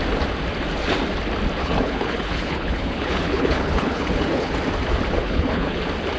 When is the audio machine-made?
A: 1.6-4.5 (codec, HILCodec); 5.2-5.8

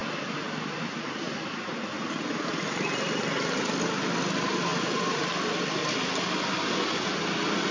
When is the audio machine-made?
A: none

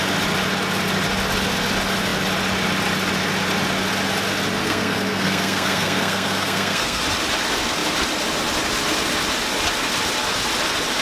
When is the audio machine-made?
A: 4.6-7.0 (codec, SNAC)

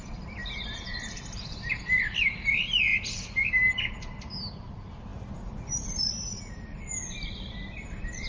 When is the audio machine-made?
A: none

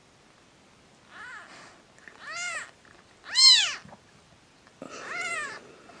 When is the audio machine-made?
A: none

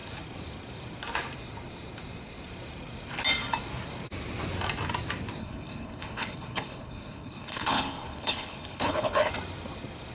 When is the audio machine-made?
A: 5.4-9.3 (codec, HILCodec)

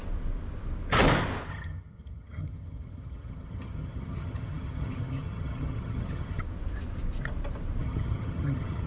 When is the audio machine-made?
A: 1.5-6.4 (vocoder, HiFi-GAN); 7.8-8.9

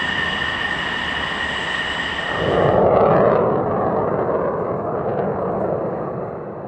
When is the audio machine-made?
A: none